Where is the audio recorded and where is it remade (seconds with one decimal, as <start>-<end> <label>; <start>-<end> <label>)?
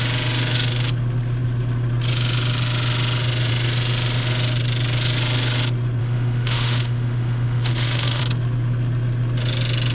0.0-6.0 recorded; 6.0-8.2 remade; 8.2-9.9 recorded